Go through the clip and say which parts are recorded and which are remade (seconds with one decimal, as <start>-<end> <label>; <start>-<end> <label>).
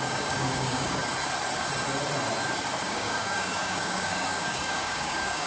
0.0-1.0 remade; 1.0-2.8 recorded; 2.8-5.5 remade